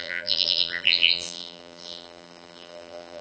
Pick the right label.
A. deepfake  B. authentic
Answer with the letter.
A